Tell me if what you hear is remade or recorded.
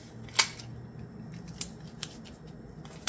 recorded